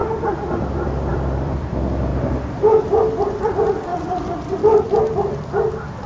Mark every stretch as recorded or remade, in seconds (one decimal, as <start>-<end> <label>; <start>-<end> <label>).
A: 0.0-0.6 remade; 0.6-1.1 recorded; 1.1-1.7 remade; 1.7-2.1 recorded; 2.1-2.6 remade; 2.6-3.9 recorded; 3.9-5.0 remade; 5.0-6.1 recorded